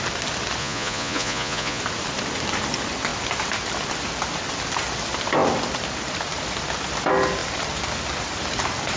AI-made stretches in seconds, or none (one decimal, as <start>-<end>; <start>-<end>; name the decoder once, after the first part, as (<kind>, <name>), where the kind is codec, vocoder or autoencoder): 0.6-1.8 (vocoder, Vocos)